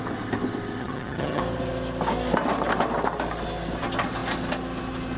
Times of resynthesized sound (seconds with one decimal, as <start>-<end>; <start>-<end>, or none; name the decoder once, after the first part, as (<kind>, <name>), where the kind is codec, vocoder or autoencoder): 0.8-1.4 (vocoder, HiFi-GAN)

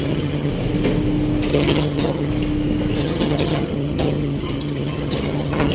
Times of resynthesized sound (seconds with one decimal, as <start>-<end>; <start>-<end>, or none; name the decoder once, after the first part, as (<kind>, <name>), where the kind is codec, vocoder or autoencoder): 0.0-0.5 (vocoder, HiFi-GAN); 1.5-2.3; 3.0-5.7

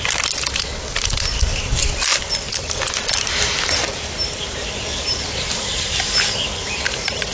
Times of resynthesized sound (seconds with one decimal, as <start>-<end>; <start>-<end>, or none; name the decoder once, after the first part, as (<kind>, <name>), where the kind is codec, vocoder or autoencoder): none

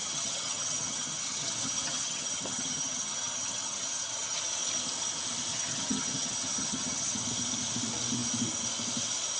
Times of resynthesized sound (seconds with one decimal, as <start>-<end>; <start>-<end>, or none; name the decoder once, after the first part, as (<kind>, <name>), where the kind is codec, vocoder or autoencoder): 0.0-4.4 (vocoder, HiFi-GAN); 5.5-7.2

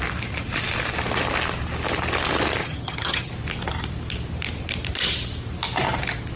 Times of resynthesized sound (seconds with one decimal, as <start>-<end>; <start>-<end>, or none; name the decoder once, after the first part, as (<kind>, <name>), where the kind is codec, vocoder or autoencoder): 2.6-3.3 (vocoder, HiFi-GAN)

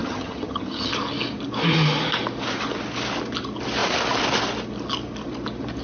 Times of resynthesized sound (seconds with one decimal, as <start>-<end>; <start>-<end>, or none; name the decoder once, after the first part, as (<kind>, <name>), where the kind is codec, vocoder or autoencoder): 0.0-0.9 (vocoder, HiFi-GAN)

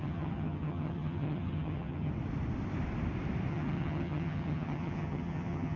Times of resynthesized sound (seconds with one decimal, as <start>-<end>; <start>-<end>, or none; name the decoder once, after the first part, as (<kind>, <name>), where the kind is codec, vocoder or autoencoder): 0.0-2.1 (vocoder, HiFi-GAN); 3.5-5.8

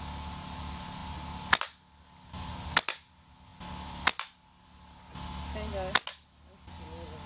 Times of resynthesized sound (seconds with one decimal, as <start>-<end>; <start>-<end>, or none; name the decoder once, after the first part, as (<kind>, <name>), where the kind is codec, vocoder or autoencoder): none